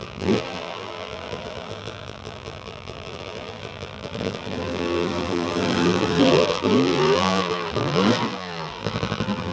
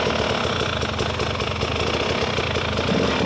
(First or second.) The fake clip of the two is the first